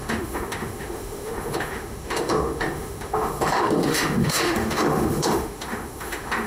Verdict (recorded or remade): remade